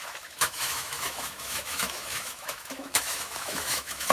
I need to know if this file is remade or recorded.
remade